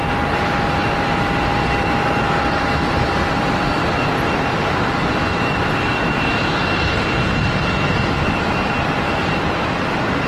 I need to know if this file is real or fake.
fake